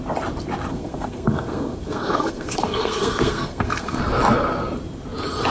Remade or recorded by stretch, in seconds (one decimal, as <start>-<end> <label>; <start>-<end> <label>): 0.0-0.7 recorded; 0.7-4.0 remade; 4.0-5.5 recorded